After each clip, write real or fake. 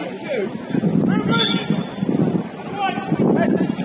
real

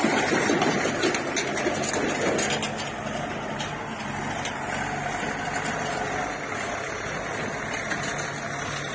real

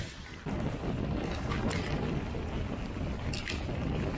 real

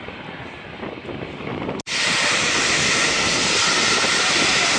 real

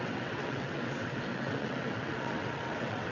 fake